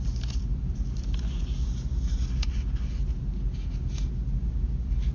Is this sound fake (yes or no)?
no